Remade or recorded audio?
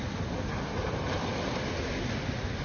recorded